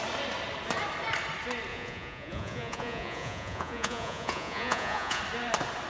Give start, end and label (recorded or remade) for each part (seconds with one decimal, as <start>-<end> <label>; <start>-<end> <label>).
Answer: 0.0-1.7 recorded; 1.7-5.2 remade; 5.2-5.9 recorded